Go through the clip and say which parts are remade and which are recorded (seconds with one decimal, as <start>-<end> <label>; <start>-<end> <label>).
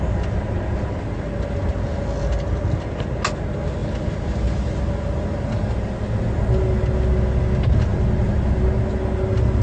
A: 0.0-9.6 recorded